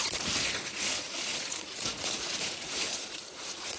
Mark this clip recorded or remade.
remade